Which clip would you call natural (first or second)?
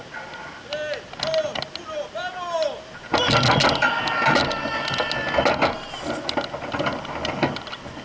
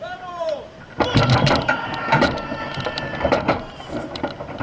first